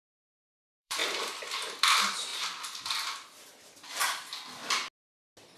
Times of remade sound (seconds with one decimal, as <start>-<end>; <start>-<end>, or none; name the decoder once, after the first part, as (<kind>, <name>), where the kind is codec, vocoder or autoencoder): 0.0-1.0 (vocoder, BigVGAN v2); 1.7-4.6